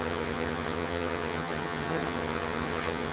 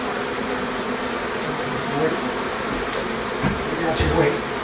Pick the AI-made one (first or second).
first